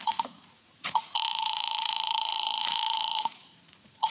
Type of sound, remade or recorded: remade